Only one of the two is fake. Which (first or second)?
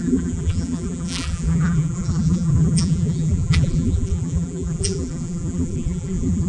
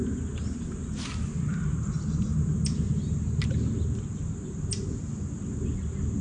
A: first